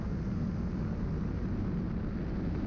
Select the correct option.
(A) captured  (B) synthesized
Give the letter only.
A